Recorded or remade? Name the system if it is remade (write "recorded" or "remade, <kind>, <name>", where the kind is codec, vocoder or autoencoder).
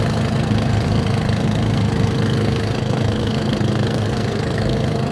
remade, codec, SNAC